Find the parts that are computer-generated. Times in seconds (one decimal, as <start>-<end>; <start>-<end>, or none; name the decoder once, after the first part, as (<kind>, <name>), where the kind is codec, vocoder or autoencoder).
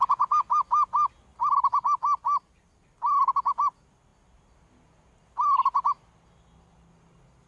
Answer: 1.3-2.0 (vocoder, BigVGAN v2)